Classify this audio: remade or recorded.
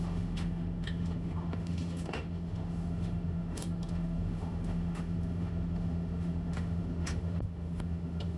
remade